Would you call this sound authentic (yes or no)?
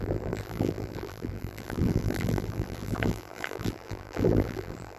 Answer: no